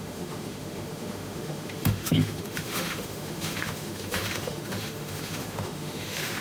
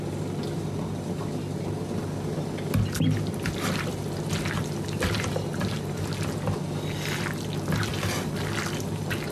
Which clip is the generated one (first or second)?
first